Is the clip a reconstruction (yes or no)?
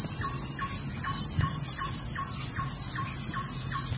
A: no